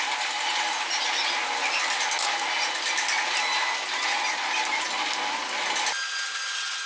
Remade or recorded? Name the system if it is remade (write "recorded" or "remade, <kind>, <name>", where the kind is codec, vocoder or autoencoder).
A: recorded